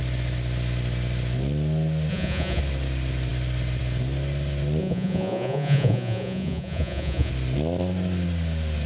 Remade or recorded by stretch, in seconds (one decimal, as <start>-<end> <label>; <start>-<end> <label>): 0.0-2.1 recorded; 2.1-2.6 remade; 2.6-4.8 recorded; 4.8-7.3 remade; 7.3-8.9 recorded